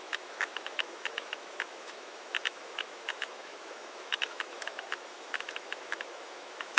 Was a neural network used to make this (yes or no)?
yes